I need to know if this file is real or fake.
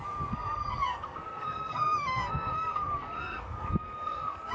fake